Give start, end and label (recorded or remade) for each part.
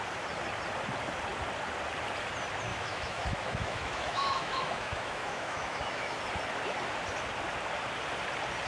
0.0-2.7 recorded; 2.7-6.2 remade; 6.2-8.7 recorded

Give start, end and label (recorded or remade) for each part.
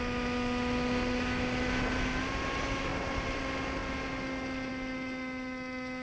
0.0-2.9 recorded; 2.9-3.4 remade; 3.4-6.0 recorded